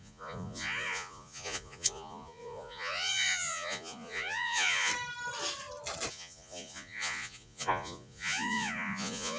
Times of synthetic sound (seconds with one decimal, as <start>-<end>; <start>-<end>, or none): 0.0-4.9; 6.1-9.4